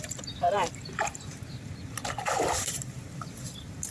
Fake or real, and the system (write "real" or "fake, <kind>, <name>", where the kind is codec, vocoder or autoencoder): fake, vocoder, BigVGAN v2